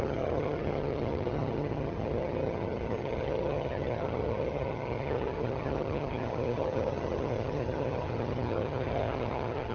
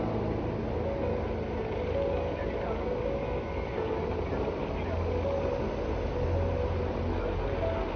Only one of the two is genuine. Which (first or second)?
second